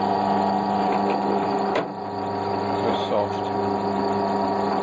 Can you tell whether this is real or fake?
real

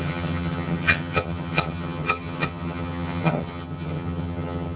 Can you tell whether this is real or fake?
fake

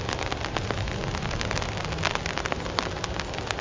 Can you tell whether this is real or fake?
real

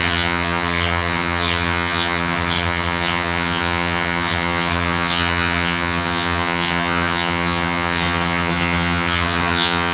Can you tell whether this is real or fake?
fake